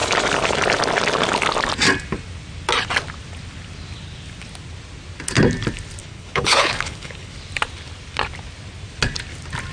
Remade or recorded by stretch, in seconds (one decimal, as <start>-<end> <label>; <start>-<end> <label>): 0.0-6.0 recorded; 6.0-7.3 remade; 7.3-9.7 recorded